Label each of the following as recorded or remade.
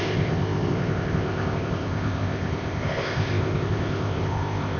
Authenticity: remade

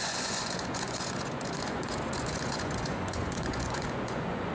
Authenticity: remade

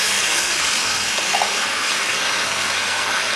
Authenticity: remade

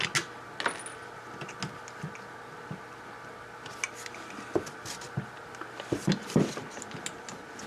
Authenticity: recorded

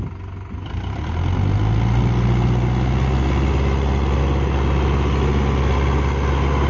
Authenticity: recorded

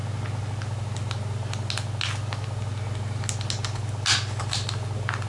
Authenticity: recorded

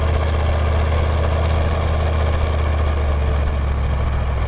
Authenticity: recorded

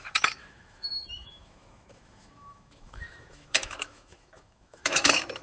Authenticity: remade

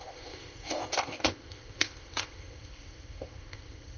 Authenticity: remade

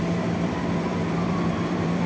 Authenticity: remade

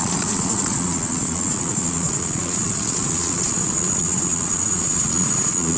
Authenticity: remade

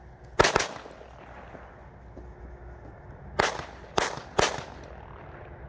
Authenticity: recorded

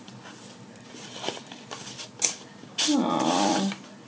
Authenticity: recorded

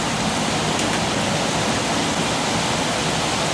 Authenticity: recorded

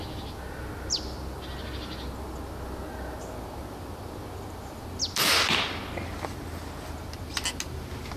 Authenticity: recorded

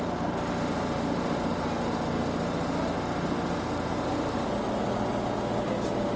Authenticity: recorded